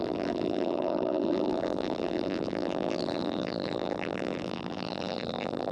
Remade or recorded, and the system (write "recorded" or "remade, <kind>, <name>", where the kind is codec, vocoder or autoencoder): remade, vocoder, BigVGAN v2